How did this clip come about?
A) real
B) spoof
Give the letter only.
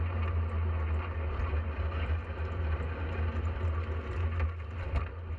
A